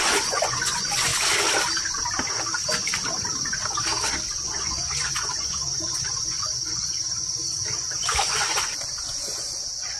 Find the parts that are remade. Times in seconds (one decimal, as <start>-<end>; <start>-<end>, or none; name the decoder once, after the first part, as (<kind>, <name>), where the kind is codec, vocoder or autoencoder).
0.0-1.1 (vocoder, Vocos); 4.4-10.0